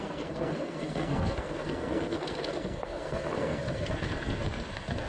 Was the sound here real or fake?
fake